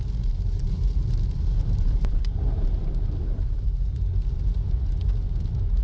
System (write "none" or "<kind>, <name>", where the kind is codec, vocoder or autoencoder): vocoder, BigVGAN v2